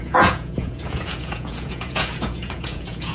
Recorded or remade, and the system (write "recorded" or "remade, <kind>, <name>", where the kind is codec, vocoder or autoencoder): remade, vocoder, Vocos